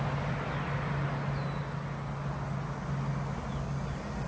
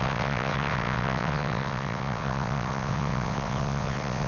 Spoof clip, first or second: second